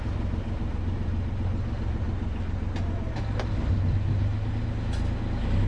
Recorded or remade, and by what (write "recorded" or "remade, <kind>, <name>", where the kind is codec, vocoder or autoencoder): recorded